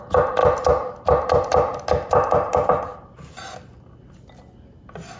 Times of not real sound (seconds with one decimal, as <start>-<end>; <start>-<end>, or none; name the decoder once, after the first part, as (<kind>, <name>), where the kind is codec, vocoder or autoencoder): none

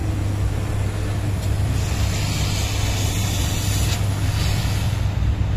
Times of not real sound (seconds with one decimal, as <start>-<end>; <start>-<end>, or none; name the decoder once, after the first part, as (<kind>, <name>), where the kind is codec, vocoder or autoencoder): none